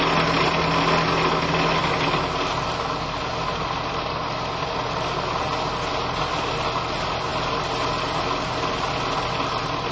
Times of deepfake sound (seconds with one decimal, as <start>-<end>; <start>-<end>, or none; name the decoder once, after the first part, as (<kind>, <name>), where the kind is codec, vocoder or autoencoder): none